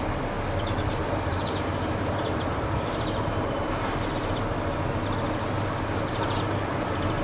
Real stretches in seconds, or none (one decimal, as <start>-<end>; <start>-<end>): 0.0-1.0; 4.3-7.2